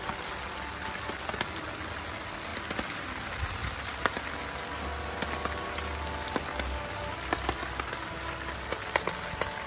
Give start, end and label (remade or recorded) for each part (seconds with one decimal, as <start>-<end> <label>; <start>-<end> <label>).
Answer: 0.0-9.7 recorded